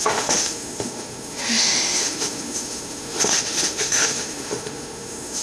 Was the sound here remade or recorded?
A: remade